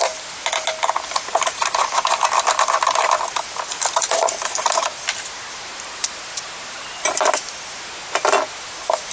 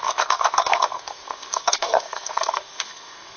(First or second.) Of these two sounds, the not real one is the second